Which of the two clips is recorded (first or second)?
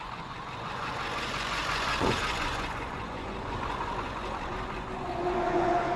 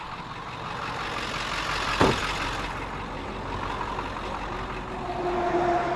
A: second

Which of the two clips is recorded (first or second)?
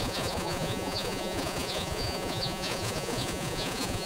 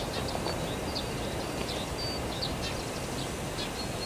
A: second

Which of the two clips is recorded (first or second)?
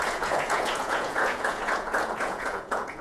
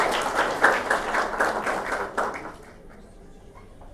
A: second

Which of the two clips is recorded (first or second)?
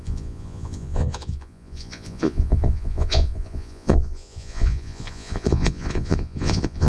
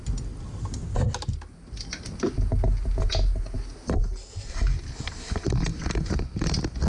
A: second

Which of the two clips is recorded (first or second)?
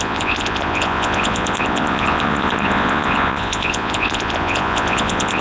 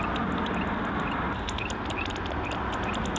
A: second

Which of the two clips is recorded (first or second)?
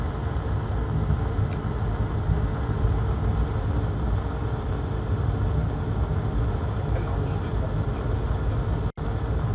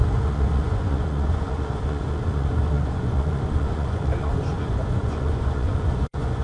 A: first